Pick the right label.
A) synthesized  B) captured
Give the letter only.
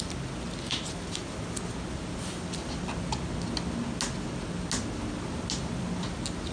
B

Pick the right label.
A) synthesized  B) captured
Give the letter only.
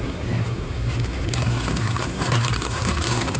A